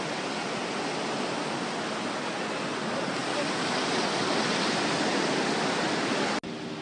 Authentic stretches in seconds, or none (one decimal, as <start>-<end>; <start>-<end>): 0.0-6.8

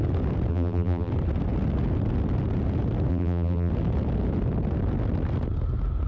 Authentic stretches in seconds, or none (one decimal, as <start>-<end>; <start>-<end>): 0.0-0.5; 1.1-3.1; 3.7-6.1

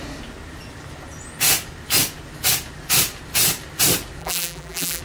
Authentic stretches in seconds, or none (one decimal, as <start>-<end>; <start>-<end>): 0.0-4.2

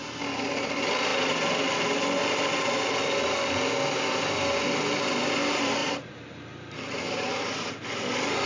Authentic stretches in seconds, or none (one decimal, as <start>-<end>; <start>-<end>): 0.0-5.8; 7.7-8.5